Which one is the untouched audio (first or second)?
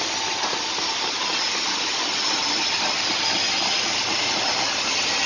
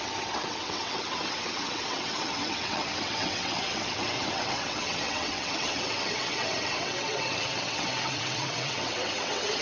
first